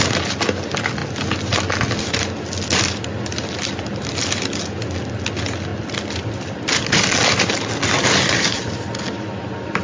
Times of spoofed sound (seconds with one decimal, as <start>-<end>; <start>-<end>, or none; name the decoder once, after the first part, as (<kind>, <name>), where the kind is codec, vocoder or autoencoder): none